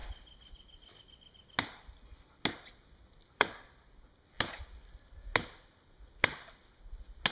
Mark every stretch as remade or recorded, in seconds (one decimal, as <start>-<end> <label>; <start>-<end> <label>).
0.0-7.3 recorded